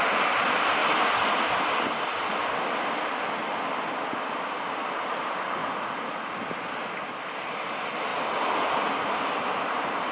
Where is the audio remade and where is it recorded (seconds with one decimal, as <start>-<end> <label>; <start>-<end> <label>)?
0.0-5.6 recorded; 5.6-6.3 remade; 6.3-10.1 recorded